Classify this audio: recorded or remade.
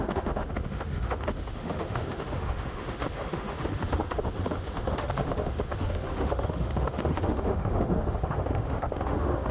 remade